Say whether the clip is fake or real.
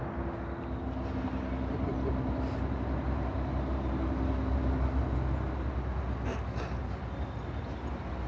real